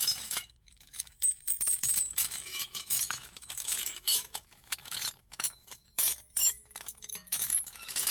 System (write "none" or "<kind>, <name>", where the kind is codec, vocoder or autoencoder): autoencoder, DAC-VAE